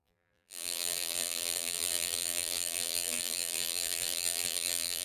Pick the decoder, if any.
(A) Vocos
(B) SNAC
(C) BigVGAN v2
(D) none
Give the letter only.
C